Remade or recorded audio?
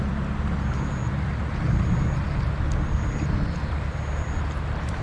recorded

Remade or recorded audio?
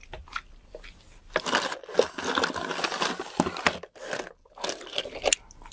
recorded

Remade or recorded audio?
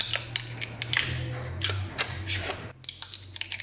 recorded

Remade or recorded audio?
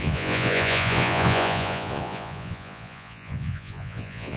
remade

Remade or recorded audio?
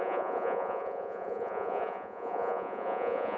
remade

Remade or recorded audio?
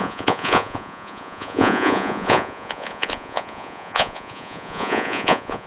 remade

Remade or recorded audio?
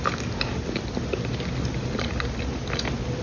recorded